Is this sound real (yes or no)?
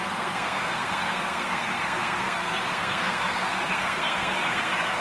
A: no